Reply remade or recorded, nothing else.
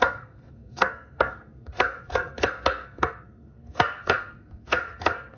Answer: remade